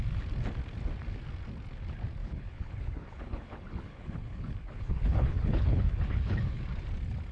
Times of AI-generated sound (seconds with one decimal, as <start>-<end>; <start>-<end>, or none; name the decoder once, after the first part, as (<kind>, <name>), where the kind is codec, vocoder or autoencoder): 2.2-6.6 (codec, HILCodec)